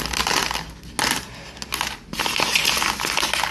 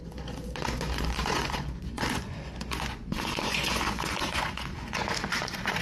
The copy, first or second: second